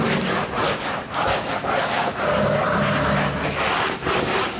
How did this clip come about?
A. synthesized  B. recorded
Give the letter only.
B